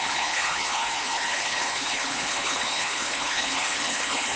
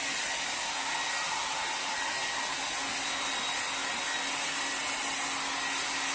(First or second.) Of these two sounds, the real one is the second